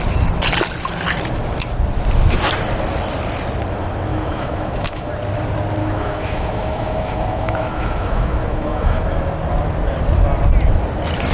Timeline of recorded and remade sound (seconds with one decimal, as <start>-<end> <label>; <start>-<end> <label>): 0.0-4.1 recorded; 4.1-5.1 remade; 5.1-5.8 recorded; 5.8-9.0 remade; 9.0-11.3 recorded